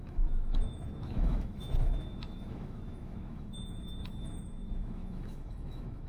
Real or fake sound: fake